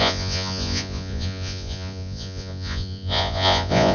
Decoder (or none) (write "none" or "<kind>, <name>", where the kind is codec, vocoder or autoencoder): vocoder, Vocos